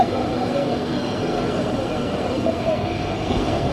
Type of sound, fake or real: fake